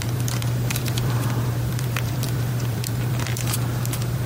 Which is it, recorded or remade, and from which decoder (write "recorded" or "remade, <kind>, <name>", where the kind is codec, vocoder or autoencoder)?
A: remade, vocoder, BigVGAN v2